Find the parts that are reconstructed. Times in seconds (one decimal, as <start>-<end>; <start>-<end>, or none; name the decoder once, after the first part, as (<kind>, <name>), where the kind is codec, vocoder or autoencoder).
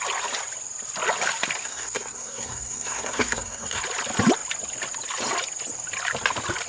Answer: 1.6-3.8 (codec, SNAC)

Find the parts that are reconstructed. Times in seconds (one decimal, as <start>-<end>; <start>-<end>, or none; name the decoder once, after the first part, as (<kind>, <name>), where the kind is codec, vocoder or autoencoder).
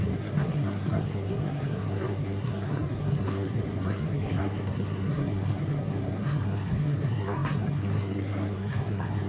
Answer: 0.0-9.3 (codec, SNAC)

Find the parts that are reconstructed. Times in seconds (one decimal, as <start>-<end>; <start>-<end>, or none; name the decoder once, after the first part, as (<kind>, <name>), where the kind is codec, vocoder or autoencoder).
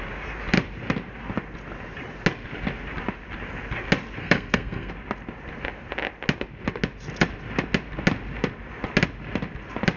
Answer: 4.2-4.9 (codec, SNAC)